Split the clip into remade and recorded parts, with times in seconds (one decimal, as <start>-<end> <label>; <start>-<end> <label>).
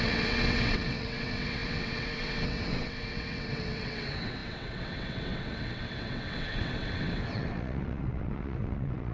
0.0-9.1 remade